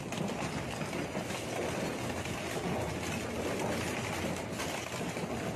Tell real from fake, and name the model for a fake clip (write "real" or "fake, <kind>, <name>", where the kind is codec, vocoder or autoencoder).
real